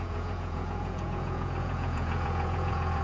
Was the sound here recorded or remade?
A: remade